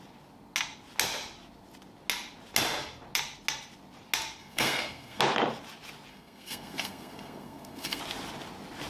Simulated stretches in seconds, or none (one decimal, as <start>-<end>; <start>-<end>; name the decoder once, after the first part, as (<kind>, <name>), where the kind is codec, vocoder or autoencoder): 4.4-5.2 (codec, SNAC); 6.1-8.0